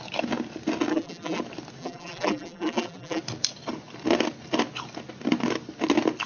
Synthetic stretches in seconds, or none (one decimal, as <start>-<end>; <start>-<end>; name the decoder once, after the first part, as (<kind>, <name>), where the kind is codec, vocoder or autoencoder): 0.9-1.4 (vocoder, BigVGAN v2); 1.8-3.2